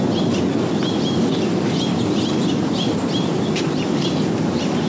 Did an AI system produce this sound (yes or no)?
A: no